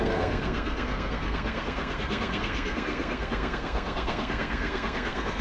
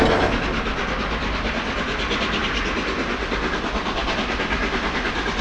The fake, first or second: first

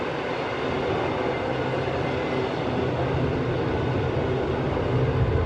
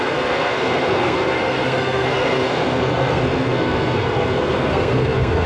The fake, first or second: second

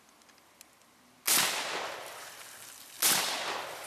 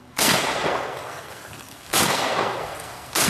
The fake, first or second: second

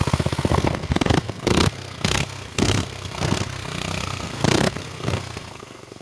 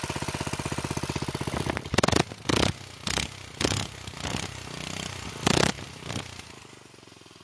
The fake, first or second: first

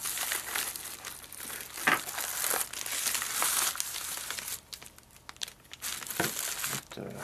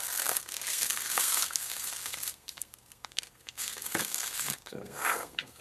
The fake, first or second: second